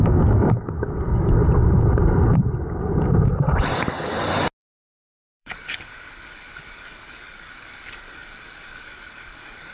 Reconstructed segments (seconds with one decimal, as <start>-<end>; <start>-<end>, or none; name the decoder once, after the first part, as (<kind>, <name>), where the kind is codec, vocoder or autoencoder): 0.0-1.4 (codec, DAC); 4.6-9.7